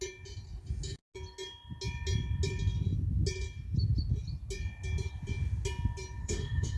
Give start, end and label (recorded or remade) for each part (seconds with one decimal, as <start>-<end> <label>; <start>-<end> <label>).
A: 0.0-6.2 recorded; 6.2-6.8 remade